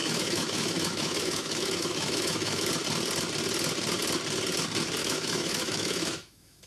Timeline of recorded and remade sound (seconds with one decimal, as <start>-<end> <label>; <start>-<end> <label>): 0.0-2.7 remade; 2.7-5.0 recorded; 5.0-6.7 remade